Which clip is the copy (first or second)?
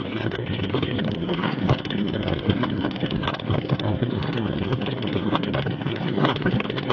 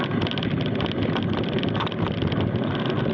first